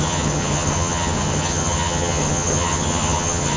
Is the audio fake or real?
fake